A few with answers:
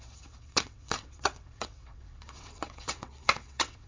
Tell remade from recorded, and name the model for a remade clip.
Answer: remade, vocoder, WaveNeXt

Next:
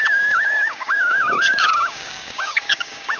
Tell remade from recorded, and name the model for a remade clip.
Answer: remade, codec, DAC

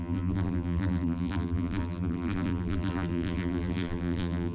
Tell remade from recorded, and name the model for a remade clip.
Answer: remade, vocoder, BigVGAN v2